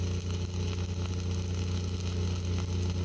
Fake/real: real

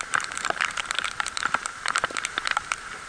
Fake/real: fake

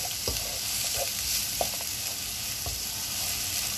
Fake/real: real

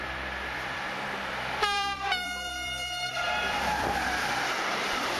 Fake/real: fake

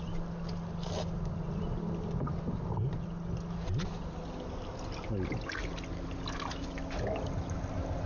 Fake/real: real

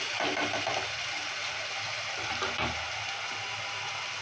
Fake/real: real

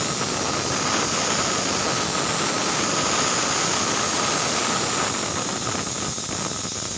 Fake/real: real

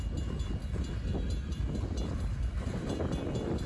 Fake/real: real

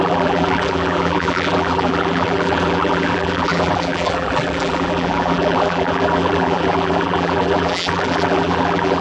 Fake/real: fake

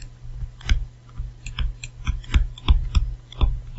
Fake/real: real